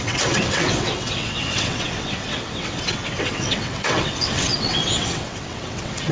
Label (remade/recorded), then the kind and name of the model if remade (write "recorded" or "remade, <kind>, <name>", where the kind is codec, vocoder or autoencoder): remade, vocoder, WaveNeXt